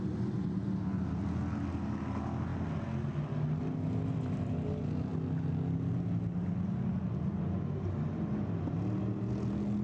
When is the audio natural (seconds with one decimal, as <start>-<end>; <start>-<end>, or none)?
0.0-9.8